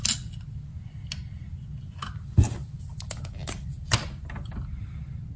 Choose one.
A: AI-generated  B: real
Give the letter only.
B